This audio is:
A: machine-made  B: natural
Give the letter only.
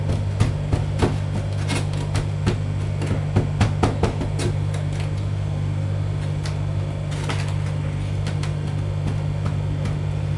B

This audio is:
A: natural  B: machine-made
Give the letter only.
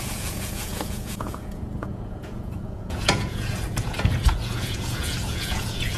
B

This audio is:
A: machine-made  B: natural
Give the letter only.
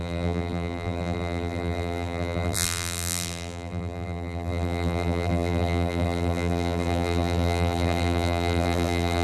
A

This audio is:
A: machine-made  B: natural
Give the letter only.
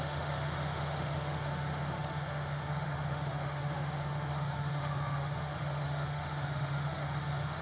A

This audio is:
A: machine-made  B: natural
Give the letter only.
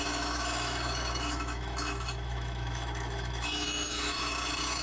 A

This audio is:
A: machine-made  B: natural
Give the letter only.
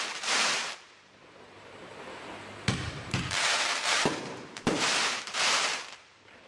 A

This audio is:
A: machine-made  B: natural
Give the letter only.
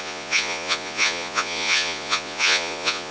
A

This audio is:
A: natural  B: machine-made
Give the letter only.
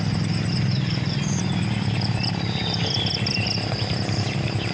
B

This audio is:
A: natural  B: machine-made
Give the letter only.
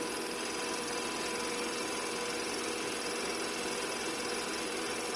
A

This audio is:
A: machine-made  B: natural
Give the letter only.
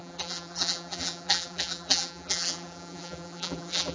A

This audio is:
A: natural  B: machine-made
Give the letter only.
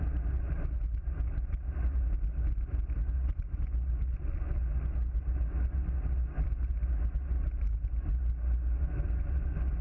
A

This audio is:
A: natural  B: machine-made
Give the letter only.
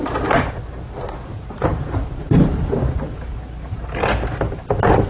A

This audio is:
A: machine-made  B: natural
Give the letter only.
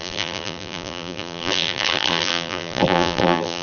A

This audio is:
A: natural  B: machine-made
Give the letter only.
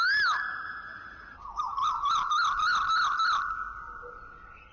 A